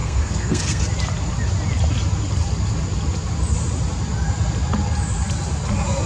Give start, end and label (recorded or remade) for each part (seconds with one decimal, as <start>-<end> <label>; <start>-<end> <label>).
0.0-0.8 remade; 0.8-6.1 recorded